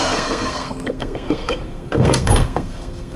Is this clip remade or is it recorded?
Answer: remade